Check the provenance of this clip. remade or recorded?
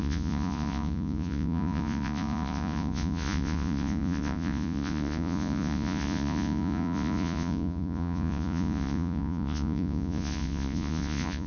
remade